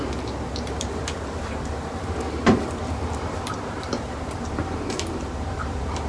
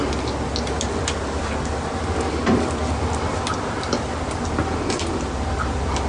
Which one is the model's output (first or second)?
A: first